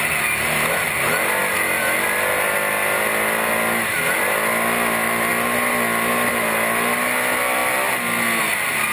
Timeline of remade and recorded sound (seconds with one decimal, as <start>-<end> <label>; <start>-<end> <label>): 0.0-8.9 recorded